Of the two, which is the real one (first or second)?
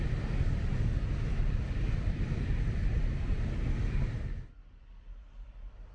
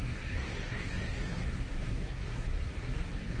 first